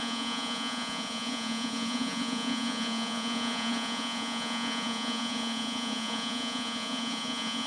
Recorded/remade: remade